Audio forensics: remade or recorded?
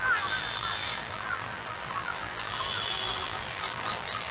remade